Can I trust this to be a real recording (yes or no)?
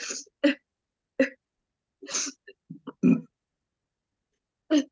yes